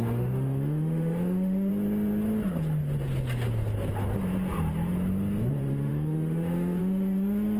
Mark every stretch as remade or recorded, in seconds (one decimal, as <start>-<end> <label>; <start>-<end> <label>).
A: 0.0-1.7 remade; 1.7-5.5 recorded; 5.5-7.6 remade